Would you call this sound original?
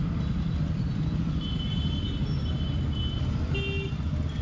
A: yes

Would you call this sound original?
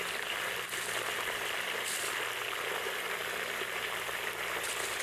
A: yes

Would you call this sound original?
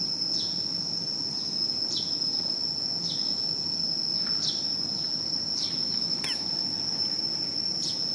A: yes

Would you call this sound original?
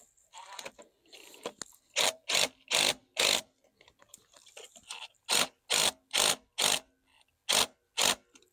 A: yes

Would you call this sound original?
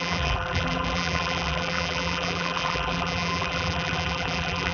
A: no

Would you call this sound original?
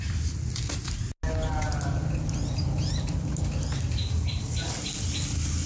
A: yes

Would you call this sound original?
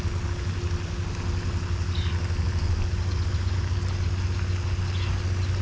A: yes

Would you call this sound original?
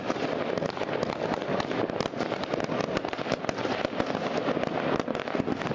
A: yes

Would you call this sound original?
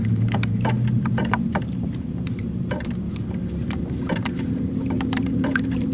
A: no